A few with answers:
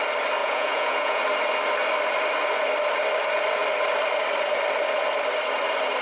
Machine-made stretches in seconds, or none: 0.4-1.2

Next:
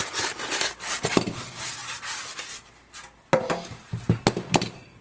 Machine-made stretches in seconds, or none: none